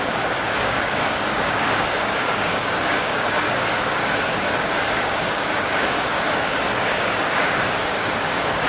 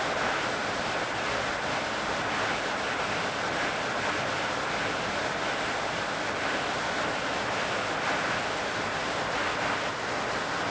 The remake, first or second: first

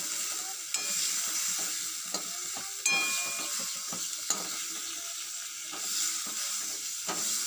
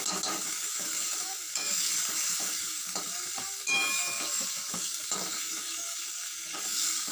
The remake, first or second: second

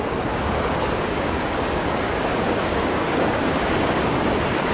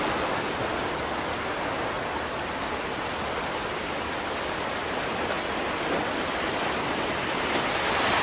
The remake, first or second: first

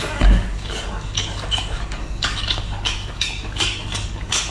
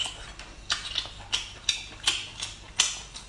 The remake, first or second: first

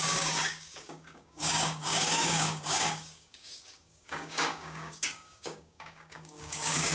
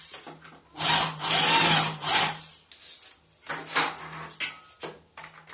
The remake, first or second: first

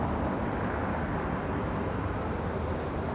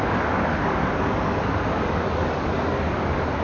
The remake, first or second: second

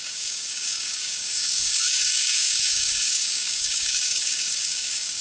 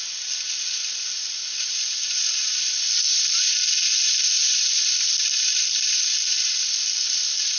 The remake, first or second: first